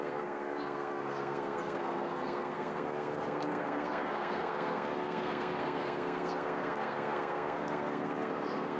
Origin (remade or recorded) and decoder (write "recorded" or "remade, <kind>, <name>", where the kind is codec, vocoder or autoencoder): remade, codec, SNAC